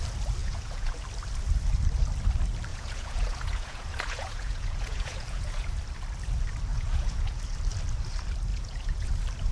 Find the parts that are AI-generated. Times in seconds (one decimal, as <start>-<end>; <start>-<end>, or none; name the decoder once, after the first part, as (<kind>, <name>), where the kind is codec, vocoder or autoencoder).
0.4-1.0 (vocoder, Vocos); 2.7-5.7; 6.7-7.4; 8.5-9.1